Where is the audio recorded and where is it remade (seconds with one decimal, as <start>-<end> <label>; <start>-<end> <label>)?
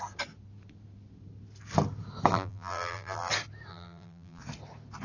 0.0-2.3 recorded; 2.3-3.3 remade; 3.3-3.7 recorded; 3.7-4.4 remade; 4.4-5.0 recorded